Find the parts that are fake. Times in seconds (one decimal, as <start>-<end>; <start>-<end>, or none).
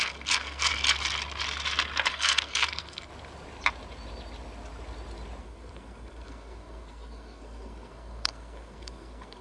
0.0-0.7; 2.1-3.1; 5.4-9.4